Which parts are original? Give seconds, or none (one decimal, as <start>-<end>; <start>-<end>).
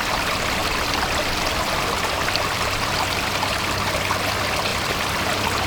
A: 0.0-4.7